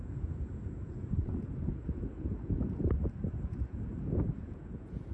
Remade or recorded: remade